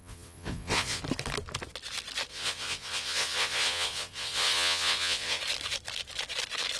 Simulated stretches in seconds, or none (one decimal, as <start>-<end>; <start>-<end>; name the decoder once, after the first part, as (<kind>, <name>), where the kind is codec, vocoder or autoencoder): 0.0-1.0 (vocoder, Vocos); 2.3-5.4